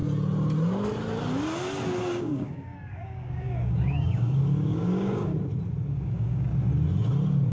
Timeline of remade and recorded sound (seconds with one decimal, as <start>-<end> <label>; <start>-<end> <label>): 0.0-2.0 recorded; 2.0-5.3 remade; 5.3-5.9 recorded; 5.9-6.5 remade; 6.5-7.5 recorded